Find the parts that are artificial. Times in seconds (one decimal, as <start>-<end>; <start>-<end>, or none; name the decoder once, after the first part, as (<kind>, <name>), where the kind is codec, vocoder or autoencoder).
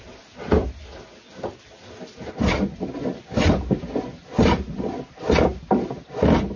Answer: none